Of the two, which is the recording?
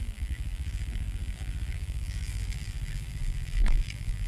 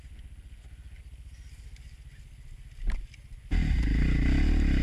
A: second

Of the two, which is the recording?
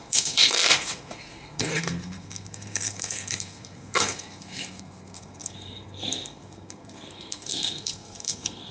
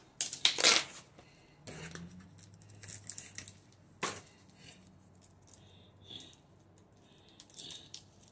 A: second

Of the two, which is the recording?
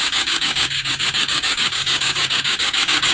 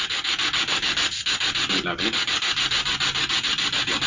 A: second